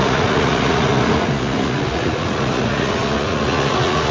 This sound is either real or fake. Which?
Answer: fake